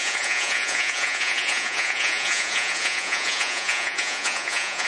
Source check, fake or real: fake